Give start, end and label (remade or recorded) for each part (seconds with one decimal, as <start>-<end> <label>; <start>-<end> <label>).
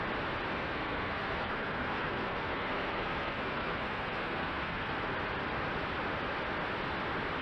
0.0-0.5 recorded; 0.5-4.9 remade; 4.9-7.4 recorded